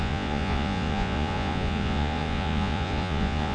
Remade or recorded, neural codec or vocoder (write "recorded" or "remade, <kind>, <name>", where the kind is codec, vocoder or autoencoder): remade, vocoder, Vocos